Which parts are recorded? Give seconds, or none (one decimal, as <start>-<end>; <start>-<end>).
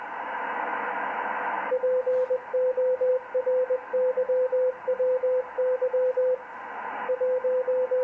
0.0-8.0